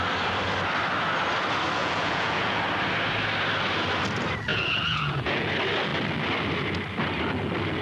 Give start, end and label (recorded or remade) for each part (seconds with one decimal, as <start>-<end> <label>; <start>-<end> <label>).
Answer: 0.0-1.8 recorded; 1.8-2.6 remade; 2.6-4.5 recorded; 4.5-5.5 remade; 5.5-7.8 recorded